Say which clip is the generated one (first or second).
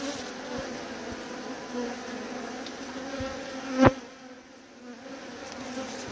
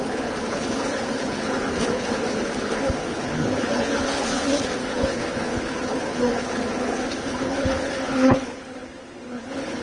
second